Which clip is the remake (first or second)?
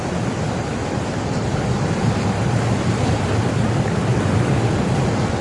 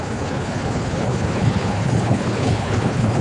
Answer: second